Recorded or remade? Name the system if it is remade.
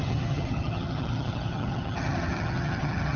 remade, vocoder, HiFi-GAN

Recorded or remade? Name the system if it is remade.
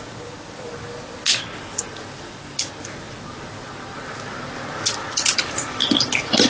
recorded